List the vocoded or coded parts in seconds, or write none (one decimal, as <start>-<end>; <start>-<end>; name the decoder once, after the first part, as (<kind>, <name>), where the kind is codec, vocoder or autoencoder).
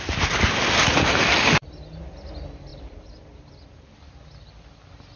0.9-1.7 (vocoder, BigVGAN v2); 2.7-4.7